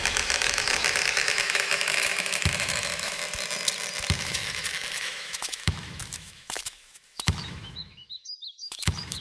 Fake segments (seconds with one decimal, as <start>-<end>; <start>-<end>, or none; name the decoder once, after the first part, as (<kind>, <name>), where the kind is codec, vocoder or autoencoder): 0.0-3.2 (autoencoder, DAC-VAE); 4.2-9.2